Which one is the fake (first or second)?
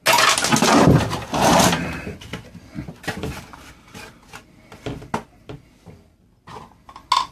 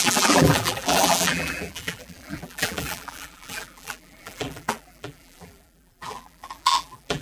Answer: second